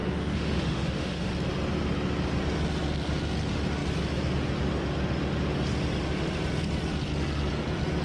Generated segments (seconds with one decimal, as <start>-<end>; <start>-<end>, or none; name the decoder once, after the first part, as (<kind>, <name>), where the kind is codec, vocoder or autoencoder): 0.0-1.3 (autoencoder, DAC-VAE)